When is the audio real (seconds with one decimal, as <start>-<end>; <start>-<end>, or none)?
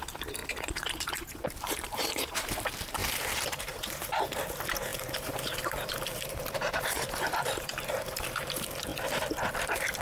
8.9-9.5